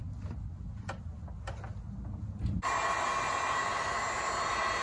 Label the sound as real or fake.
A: real